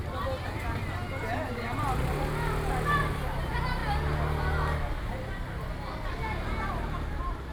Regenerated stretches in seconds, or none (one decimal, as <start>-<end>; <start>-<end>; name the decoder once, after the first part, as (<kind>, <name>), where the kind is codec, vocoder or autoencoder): none